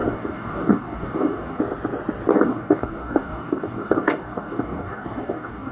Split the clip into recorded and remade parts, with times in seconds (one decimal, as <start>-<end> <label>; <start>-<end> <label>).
0.0-1.6 remade; 1.6-2.3 recorded; 2.3-5.7 remade

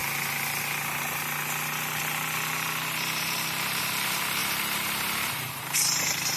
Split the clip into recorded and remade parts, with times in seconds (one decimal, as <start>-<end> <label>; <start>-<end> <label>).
0.0-4.4 recorded; 4.4-6.4 remade